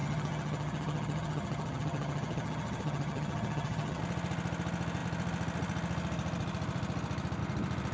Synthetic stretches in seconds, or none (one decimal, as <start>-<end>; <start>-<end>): 0.0-4.0

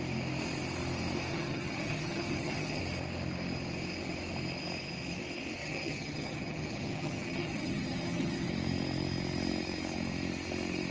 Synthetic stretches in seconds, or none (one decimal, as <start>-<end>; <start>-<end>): 1.3-2.8; 5.6-8.5